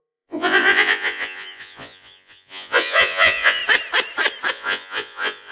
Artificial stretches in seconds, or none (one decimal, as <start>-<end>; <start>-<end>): 0.0-3.6; 4.5-5.5